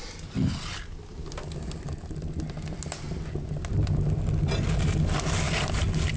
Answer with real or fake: real